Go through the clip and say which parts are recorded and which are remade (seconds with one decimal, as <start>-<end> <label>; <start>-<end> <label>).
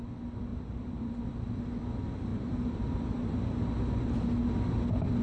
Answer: 0.0-0.5 recorded; 0.5-1.3 remade; 1.3-2.3 recorded; 2.3-3.0 remade; 3.0-5.2 recorded